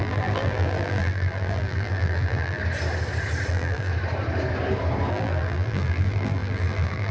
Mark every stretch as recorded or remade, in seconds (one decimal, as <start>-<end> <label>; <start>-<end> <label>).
0.0-2.6 remade; 2.6-3.5 recorded; 3.5-3.9 remade; 3.9-5.1 recorded; 5.1-7.1 remade

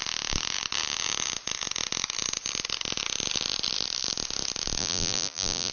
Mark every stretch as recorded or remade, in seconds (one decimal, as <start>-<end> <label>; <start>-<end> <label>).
0.0-4.8 recorded; 4.8-5.7 remade